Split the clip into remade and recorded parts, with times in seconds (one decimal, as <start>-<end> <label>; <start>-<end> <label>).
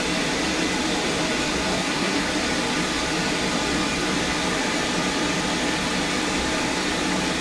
0.0-1.7 recorded; 1.7-2.3 remade; 2.3-7.4 recorded